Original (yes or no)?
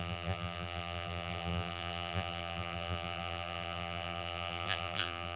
no